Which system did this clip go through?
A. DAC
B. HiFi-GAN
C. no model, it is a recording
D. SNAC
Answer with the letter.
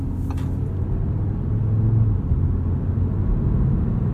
C